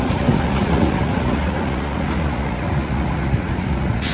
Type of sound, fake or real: fake